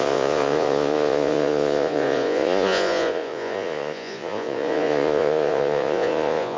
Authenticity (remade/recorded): remade